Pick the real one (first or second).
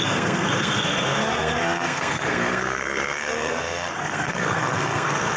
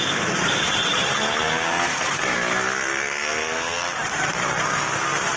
second